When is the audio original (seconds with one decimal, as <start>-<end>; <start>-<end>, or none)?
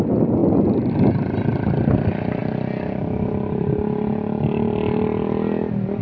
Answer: 0.0-6.0